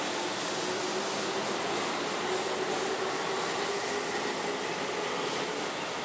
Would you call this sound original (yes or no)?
yes